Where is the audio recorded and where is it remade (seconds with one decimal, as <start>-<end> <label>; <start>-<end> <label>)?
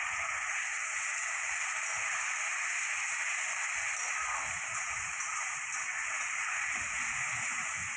0.0-1.9 remade; 1.9-4.5 recorded; 4.5-8.0 remade